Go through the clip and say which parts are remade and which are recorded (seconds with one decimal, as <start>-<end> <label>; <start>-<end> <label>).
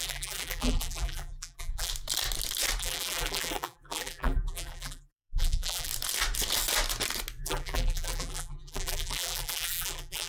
0.0-1.9 remade; 1.9-2.8 recorded; 2.8-5.9 remade; 5.9-7.4 recorded; 7.4-10.3 remade